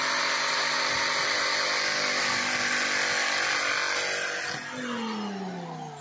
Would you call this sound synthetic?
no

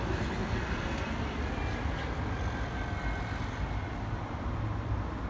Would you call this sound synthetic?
no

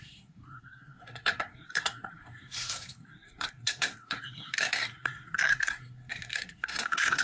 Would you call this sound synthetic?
yes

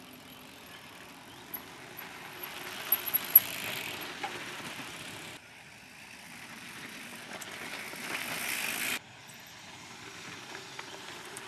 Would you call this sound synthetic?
no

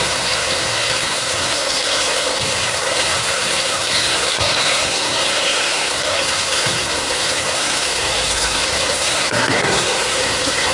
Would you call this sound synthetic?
yes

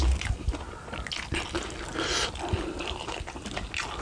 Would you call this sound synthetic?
no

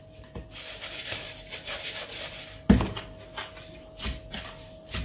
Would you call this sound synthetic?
no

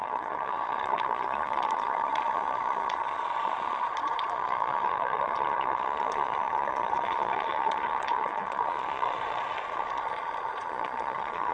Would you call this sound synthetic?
yes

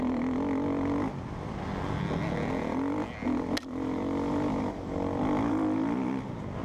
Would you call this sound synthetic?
no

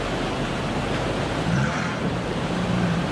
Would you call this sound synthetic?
yes